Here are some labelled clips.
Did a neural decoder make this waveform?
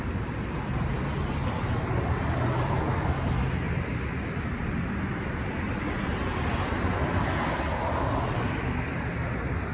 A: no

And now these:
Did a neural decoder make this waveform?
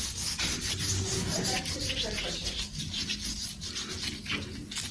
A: no